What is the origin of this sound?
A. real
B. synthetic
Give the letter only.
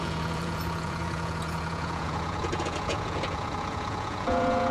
B